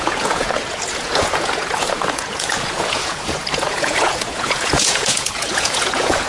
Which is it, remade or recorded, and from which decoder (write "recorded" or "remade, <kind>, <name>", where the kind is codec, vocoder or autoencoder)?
remade, vocoder, Vocos